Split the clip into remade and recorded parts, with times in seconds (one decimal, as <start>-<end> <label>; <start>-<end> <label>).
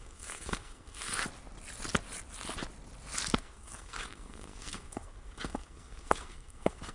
0.0-1.2 remade; 1.2-3.4 recorded; 3.4-6.9 remade